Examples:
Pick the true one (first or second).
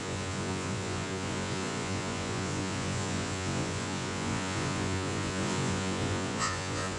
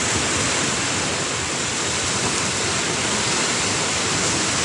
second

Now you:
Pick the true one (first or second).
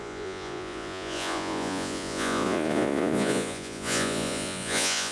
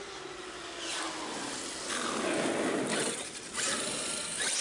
second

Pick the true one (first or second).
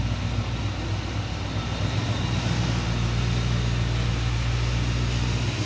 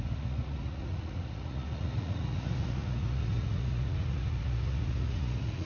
first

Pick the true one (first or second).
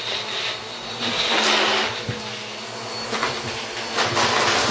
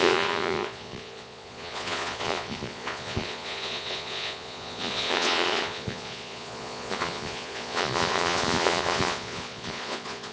first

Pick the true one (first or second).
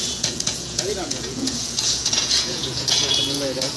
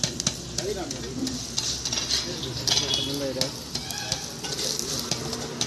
second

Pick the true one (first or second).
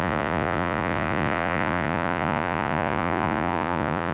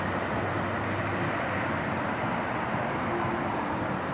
second